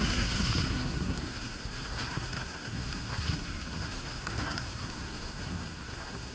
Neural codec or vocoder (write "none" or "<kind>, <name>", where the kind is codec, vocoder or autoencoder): codec, SNAC